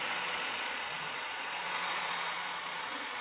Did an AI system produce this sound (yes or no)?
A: yes